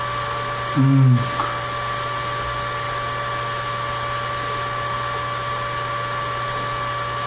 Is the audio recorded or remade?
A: recorded